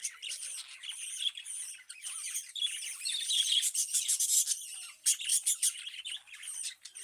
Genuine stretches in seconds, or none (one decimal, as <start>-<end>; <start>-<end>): 5.3-6.0